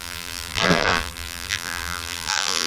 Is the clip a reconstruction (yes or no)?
yes